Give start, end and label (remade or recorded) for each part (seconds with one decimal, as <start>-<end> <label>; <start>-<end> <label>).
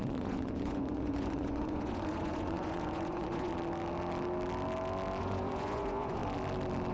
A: 0.0-3.5 remade; 3.5-5.2 recorded; 5.2-6.2 remade; 6.2-6.9 recorded